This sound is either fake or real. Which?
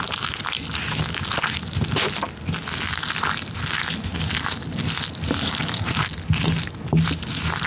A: real